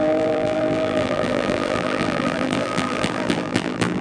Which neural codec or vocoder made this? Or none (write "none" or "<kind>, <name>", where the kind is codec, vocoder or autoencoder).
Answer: vocoder, BigVGAN v2